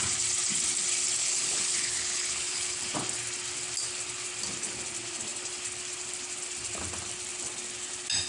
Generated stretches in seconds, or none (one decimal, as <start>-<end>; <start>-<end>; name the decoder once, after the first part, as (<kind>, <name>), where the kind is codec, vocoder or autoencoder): 1.2-2.8 (codec, HILCodec)